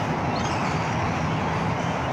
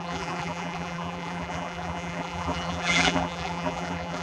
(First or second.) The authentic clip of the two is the first